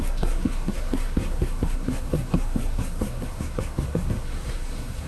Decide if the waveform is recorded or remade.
remade